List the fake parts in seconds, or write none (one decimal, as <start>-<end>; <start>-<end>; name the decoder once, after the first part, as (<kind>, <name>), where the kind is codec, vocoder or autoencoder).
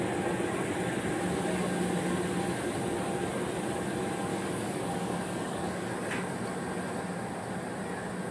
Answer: 4.3-5.9 (codec, DAC)